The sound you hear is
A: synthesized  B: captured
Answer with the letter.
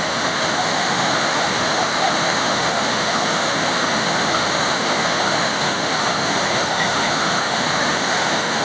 A